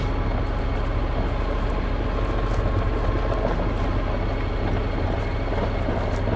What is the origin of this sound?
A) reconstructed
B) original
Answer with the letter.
B